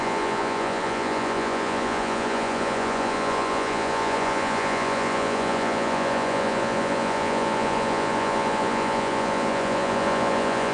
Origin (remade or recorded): remade